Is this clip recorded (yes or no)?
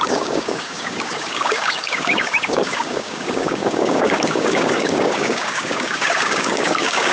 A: no